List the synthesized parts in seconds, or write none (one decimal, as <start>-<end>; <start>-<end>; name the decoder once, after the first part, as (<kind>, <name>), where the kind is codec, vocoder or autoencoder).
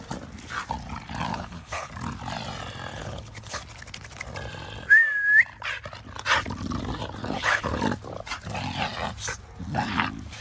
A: 1.3-1.9 (codec, HILCodec); 2.9-3.6; 7.2-7.8